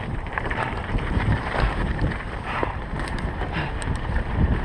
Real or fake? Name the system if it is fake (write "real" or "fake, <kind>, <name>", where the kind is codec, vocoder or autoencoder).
fake, vocoder, BigVGAN v2